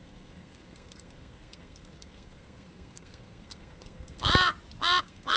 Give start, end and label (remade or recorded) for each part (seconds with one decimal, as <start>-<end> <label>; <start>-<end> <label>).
0.0-4.3 remade; 4.3-5.0 recorded; 5.0-5.4 remade